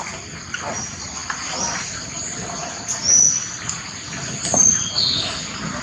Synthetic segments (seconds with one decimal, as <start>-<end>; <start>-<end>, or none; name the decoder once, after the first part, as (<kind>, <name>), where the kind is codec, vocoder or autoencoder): none